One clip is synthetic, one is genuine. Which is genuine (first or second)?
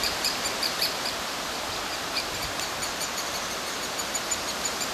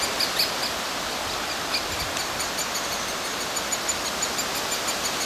second